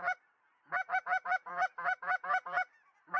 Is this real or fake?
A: real